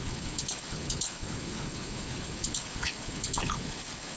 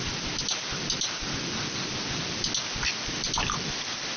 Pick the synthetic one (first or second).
first